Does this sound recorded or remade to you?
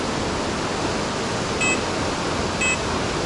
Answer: recorded